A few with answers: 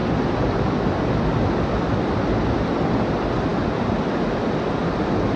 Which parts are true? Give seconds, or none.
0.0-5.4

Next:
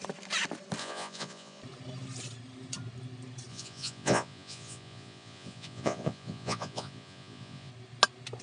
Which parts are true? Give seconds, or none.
0.0-0.8; 1.6-3.5; 7.7-8.4

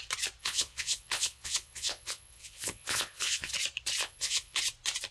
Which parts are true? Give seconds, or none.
0.0-0.4; 3.5-4.0; 4.6-5.1

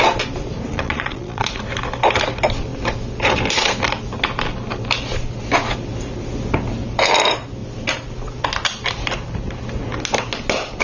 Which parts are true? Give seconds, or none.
0.0-0.7; 1.6-10.8

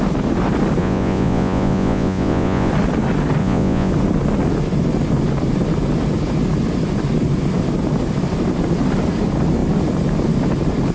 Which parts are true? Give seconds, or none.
0.0-0.8; 2.7-3.4; 3.9-10.9